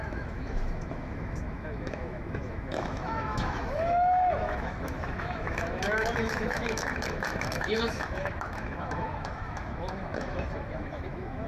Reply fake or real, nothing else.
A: fake